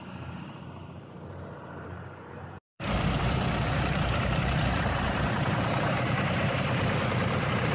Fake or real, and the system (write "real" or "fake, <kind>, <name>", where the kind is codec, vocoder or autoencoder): fake, vocoder, BigVGAN v2